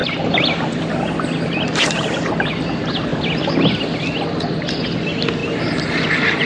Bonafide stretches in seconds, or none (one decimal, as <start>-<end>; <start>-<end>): 0.0-6.5